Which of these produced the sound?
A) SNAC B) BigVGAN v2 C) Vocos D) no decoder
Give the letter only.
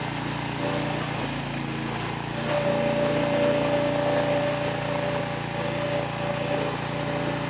D